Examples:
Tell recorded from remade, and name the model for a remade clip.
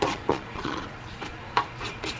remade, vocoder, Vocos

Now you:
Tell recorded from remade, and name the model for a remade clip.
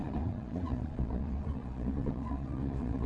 remade, vocoder, Vocos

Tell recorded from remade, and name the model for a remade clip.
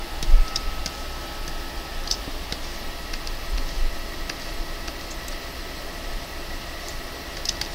recorded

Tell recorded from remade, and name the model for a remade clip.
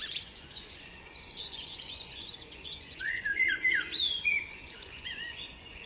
remade, vocoder, Vocos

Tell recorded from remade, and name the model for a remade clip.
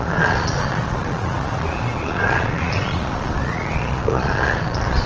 remade, vocoder, Vocos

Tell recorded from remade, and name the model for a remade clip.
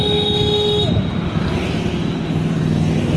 recorded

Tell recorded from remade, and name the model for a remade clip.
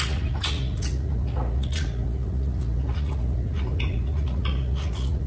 remade, vocoder, Vocos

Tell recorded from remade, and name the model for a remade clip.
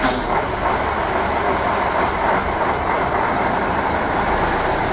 recorded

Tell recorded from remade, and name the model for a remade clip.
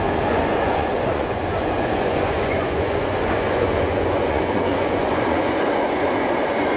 remade, vocoder, Vocos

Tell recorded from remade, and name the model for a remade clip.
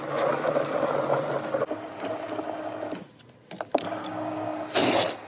recorded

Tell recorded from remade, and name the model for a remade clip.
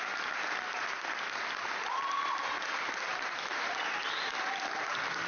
recorded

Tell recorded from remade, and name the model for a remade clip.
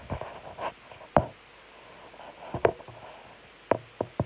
recorded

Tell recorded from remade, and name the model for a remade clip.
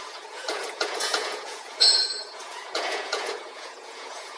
remade, vocoder, Vocos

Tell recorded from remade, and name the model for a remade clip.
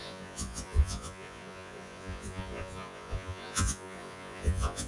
remade, vocoder, Vocos